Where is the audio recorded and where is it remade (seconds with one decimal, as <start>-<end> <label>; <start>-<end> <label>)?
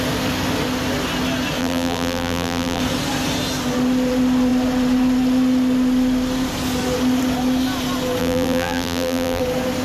0.0-1.6 recorded; 1.6-2.8 remade; 2.8-8.2 recorded; 8.2-9.4 remade; 9.4-9.8 recorded